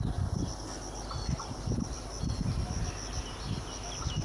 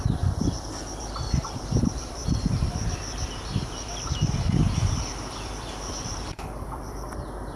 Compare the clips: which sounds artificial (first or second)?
second